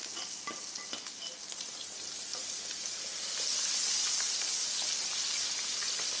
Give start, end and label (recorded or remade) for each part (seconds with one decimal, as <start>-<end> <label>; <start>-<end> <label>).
0.0-6.2 recorded